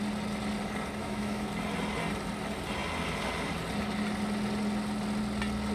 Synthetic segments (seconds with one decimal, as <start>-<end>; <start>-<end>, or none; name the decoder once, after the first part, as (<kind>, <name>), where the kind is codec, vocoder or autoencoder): 1.0-1.5 (autoencoder, DAC-VAE)